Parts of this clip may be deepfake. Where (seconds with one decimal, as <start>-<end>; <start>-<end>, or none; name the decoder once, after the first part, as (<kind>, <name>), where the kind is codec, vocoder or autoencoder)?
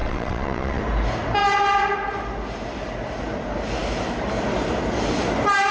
0.0-0.8 (vocoder, WaveNeXt)